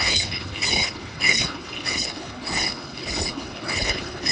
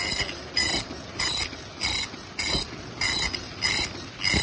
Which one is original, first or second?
second